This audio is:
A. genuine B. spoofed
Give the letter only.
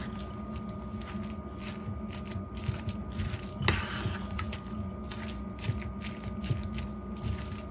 A